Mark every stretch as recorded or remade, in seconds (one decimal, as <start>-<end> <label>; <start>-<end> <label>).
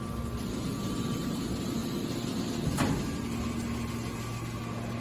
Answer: 0.0-5.0 recorded